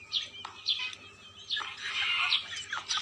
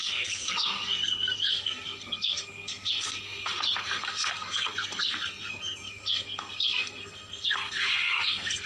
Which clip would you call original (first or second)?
first